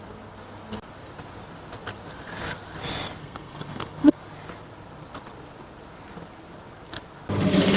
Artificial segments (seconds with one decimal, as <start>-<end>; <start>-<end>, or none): 3.2-4.2